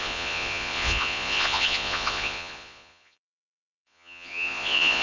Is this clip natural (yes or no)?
no